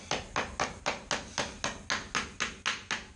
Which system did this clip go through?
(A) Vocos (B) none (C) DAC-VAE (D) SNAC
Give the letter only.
B